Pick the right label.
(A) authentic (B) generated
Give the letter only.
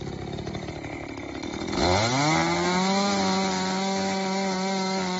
A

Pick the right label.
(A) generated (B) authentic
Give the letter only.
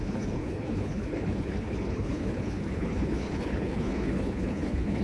A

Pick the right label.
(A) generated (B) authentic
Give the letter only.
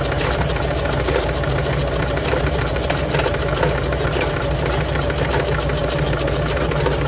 A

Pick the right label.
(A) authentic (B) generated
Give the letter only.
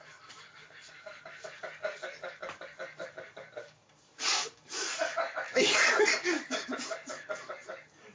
B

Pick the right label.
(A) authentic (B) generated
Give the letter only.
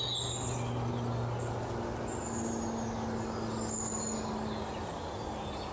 A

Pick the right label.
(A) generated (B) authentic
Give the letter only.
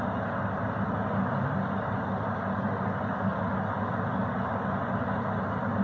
B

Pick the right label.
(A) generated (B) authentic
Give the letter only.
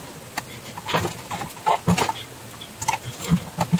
B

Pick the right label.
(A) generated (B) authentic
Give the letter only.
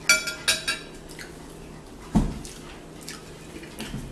B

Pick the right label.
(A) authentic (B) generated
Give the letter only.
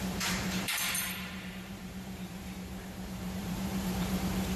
B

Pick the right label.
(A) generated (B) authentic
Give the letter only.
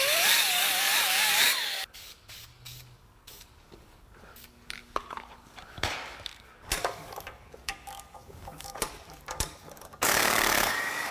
A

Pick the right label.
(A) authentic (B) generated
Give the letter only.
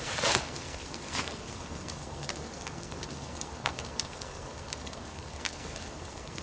B